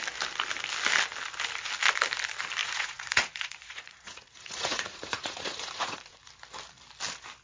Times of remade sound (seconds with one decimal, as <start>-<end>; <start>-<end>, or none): 2.6-6.3